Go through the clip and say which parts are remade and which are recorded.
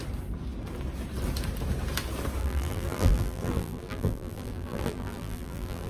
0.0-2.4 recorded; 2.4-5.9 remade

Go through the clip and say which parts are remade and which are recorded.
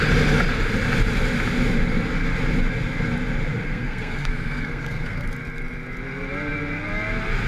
0.0-3.5 recorded; 3.5-5.3 remade; 5.3-7.5 recorded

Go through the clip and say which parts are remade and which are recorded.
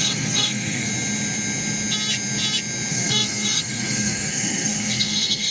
0.0-0.9 remade; 0.9-2.9 recorded; 2.9-5.5 remade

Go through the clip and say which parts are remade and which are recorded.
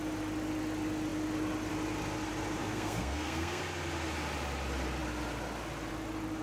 0.0-2.6 recorded; 2.6-3.6 remade; 3.6-6.4 recorded